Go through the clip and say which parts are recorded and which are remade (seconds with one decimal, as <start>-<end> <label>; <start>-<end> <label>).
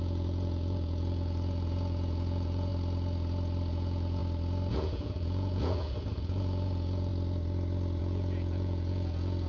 0.0-2.7 remade; 2.7-3.7 recorded; 3.7-4.2 remade; 4.2-4.7 recorded; 4.7-7.1 remade; 7.1-8.0 recorded; 8.0-9.5 remade